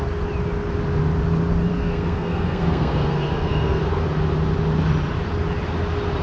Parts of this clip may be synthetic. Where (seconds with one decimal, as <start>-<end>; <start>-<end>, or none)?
1.7-3.8